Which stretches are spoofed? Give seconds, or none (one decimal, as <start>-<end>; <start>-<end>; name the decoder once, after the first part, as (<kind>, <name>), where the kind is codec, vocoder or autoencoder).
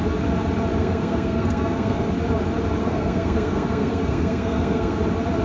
0.8-2.1 (codec, SNAC); 2.8-5.0